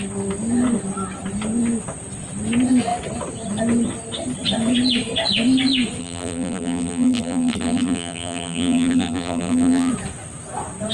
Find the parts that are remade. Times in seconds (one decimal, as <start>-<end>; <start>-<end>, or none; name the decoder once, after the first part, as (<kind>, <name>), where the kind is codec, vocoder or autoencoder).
6.0-9.9 (vocoder, BigVGAN v2)